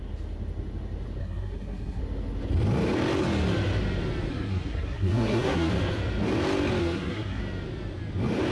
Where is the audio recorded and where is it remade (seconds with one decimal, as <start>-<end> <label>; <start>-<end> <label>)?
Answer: 0.0-1.2 recorded; 1.2-2.0 remade; 2.0-4.3 recorded; 4.3-5.7 remade; 5.7-6.8 recorded; 6.8-7.4 remade; 7.4-8.5 recorded